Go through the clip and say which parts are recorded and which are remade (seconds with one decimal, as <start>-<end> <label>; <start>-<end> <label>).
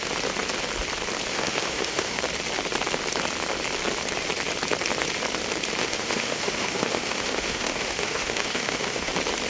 0.0-1.3 recorded; 1.3-2.2 remade; 2.2-5.8 recorded; 5.8-9.1 remade; 9.1-9.5 recorded